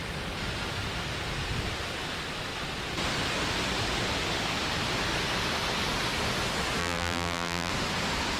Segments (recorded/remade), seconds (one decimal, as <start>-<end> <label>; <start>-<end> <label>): 0.0-6.8 recorded; 6.8-7.7 remade; 7.7-8.4 recorded